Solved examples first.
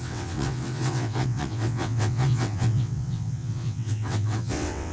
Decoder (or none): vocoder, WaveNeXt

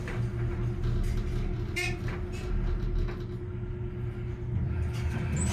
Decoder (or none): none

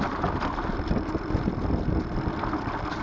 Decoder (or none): none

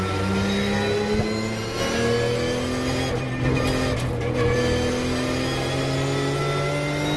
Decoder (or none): none